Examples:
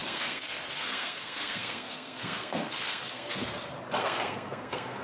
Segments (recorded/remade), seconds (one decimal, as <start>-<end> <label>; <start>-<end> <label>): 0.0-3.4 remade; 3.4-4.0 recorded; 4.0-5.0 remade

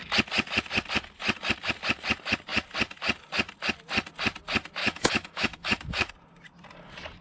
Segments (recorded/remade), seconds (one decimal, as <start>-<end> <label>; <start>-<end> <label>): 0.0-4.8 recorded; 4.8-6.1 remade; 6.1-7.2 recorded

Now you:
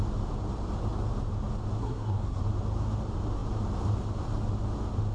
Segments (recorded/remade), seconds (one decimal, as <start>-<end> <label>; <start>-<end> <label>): 0.0-1.8 recorded; 1.8-2.4 remade; 2.4-5.1 recorded

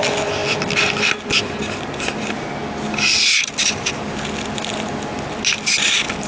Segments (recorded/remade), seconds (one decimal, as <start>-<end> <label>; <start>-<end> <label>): 0.0-6.3 recorded

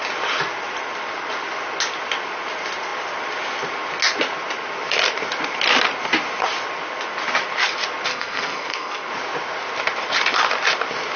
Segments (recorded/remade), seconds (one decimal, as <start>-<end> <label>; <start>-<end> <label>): 0.0-8.1 recorded; 8.1-9.1 remade; 9.1-11.2 recorded

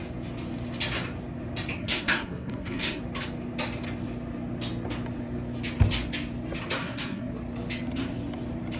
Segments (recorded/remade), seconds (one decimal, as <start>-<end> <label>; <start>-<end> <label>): 0.0-1.8 recorded; 1.8-3.0 remade; 3.0-6.8 recorded; 6.8-7.3 remade; 7.3-8.8 recorded

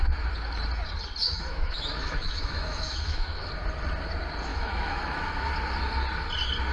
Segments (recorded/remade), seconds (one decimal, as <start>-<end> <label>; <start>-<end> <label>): 0.0-1.2 recorded; 1.2-3.5 remade; 3.5-4.5 recorded; 4.5-5.5 remade; 5.5-6.7 recorded

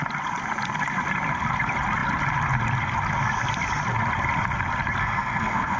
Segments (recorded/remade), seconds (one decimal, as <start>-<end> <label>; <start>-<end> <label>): 0.0-5.0 recorded; 5.0-5.8 remade